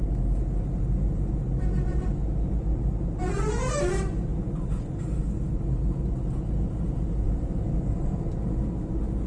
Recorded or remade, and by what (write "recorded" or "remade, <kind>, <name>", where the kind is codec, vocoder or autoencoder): recorded